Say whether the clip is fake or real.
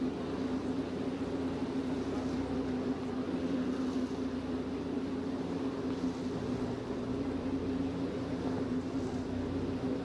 real